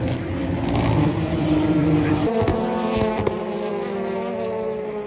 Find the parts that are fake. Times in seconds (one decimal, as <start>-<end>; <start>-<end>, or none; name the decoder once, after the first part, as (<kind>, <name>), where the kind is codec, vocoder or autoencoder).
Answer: 0.4-2.1 (vocoder, BigVGAN v2); 2.5-3.7